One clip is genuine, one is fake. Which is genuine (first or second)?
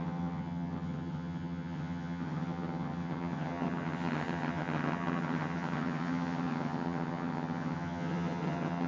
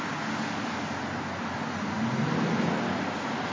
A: second